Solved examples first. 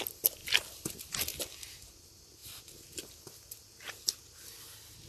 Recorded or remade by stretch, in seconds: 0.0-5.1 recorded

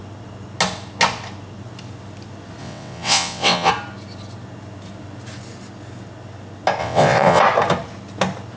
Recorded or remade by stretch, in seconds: 0.0-2.6 recorded; 2.6-3.7 remade; 3.7-6.8 recorded; 6.8-7.4 remade; 7.4-8.6 recorded

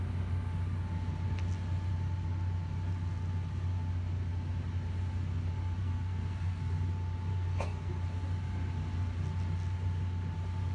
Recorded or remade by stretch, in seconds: 0.0-5.8 recorded; 5.8-6.7 remade; 6.7-7.3 recorded; 7.3-8.0 remade; 8.0-10.7 recorded